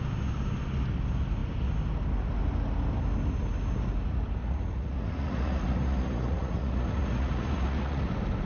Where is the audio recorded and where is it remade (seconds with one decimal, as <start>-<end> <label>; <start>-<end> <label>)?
0.0-4.4 recorded; 4.4-8.1 remade; 8.1-8.5 recorded